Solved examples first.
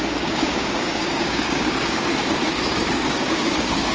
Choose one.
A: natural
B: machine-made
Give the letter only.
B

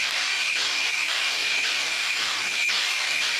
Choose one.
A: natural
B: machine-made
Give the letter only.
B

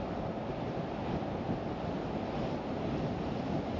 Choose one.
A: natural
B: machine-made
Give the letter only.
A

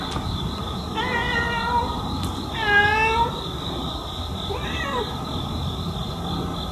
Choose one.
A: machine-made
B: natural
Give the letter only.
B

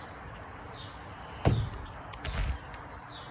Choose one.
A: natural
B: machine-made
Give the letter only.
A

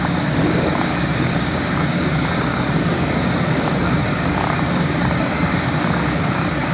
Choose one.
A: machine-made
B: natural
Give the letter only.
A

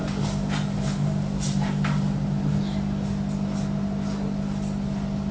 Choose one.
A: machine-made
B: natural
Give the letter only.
B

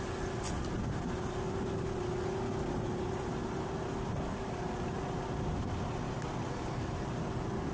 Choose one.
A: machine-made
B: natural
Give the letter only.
B